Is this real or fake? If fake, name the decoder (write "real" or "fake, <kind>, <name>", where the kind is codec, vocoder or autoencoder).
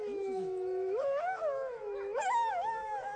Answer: fake, autoencoder, DAC-VAE